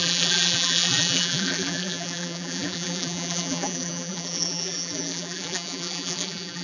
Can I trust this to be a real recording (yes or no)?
no